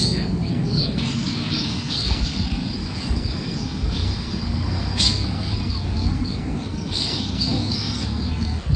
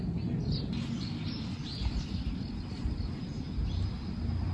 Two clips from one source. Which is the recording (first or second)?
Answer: second